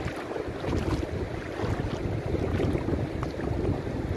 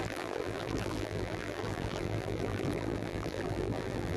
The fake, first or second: second